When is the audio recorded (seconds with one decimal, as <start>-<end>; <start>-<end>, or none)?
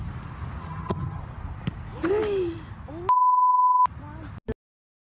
0.0-0.6; 1.2-5.2